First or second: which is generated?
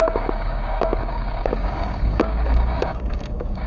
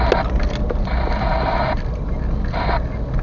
first